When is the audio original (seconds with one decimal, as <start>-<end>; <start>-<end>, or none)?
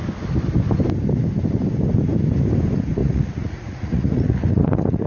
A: 0.0-3.0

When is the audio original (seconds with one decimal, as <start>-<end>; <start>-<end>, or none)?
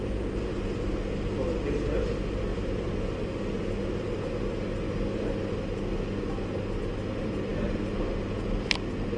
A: 0.0-9.2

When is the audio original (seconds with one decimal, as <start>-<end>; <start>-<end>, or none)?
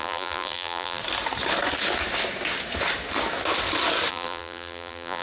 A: 1.0-4.1